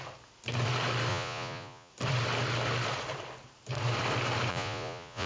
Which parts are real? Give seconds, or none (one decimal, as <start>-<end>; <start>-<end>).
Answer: 0.0-1.1; 1.9-4.5